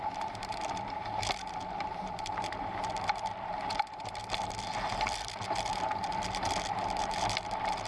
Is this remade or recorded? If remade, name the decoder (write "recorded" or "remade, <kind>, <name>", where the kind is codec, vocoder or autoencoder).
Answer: remade, vocoder, BigVGAN v2